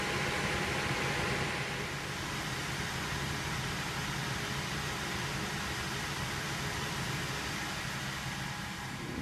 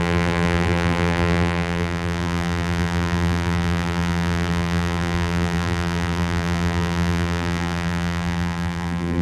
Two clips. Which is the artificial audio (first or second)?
second